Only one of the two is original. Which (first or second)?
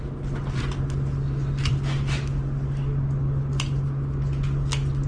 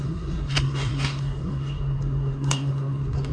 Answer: first